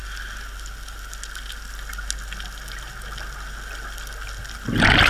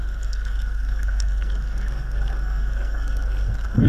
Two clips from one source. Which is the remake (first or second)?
second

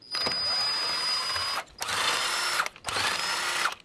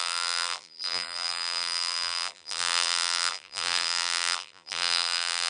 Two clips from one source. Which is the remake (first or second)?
second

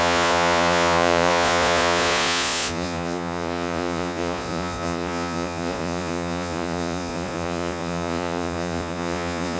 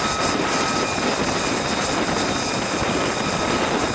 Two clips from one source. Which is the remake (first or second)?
first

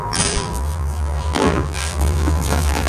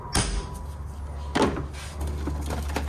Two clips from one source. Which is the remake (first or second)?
first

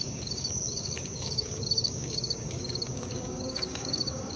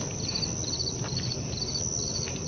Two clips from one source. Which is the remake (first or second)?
first